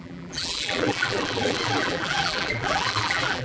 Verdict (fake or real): fake